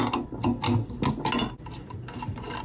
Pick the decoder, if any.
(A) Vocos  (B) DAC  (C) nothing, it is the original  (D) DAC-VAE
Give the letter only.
C